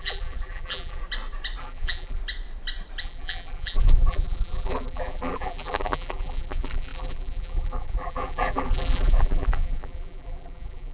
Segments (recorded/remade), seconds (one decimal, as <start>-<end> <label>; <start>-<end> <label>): 0.0-1.0 remade; 1.0-1.6 recorded; 1.6-2.2 remade; 2.2-3.0 recorded; 3.0-10.9 remade